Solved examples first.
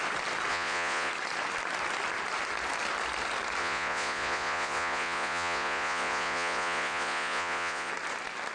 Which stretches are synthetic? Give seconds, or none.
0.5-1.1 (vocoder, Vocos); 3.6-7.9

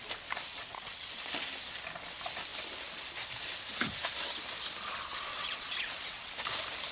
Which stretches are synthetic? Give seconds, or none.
0.5-1.3 (vocoder, WaveNeXt); 5.1-6.3

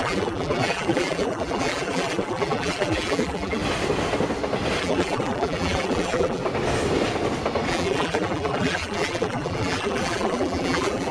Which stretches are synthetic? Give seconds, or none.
0.0-3.6 (vocoder, BigVGAN v2); 4.8-6.4; 7.7-11.1

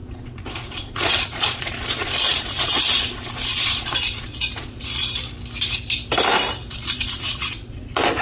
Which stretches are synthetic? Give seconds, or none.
0.0-5.0 (vocoder, Vocos); 6.7-8.2